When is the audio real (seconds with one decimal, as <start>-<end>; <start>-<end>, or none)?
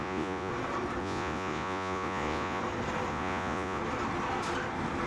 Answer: 0.5-1.0; 2.6-3.1; 3.8-5.1